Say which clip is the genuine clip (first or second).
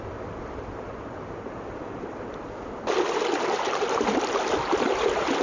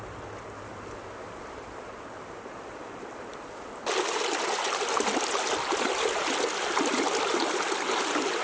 second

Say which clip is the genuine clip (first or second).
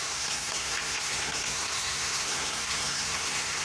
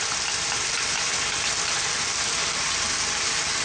second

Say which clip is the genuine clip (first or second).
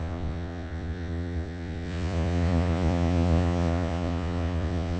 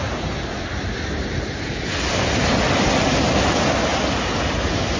second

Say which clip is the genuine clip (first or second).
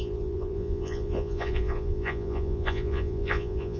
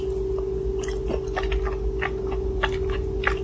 second